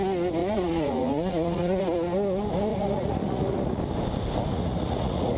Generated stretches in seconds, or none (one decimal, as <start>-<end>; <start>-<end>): 0.4-1.8; 2.7-3.8; 4.5-5.4